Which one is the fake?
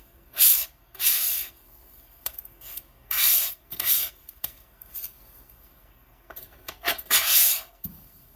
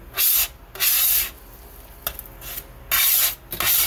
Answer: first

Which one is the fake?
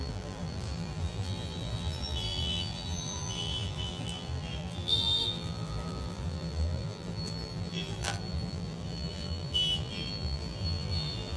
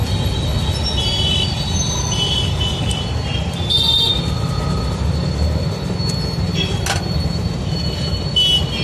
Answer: first